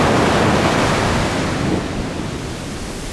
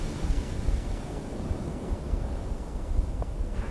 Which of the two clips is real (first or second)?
first